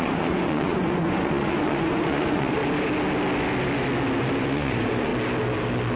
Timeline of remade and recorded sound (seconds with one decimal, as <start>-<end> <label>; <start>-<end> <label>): 0.0-2.6 remade; 2.6-4.4 recorded; 4.4-5.1 remade; 5.1-6.0 recorded